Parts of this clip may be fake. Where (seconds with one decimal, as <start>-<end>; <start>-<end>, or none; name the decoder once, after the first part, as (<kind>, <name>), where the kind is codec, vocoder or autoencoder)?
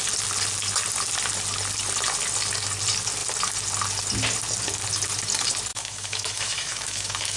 5.7-7.4 (autoencoder, DAC-VAE)